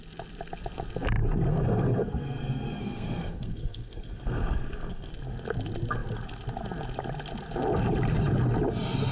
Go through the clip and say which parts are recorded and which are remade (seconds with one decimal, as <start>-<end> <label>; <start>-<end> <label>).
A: 0.0-1.5 recorded; 1.5-5.1 remade; 5.1-9.1 recorded